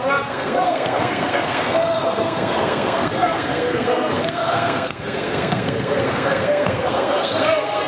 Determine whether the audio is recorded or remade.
remade